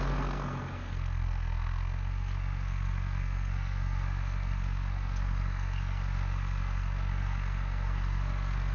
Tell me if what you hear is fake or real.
fake